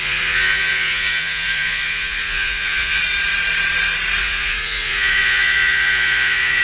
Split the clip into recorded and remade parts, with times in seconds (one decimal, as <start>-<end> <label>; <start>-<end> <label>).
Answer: 0.0-3.0 remade; 3.0-4.2 recorded; 4.2-6.6 remade